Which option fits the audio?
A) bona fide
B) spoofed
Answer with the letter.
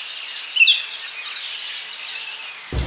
A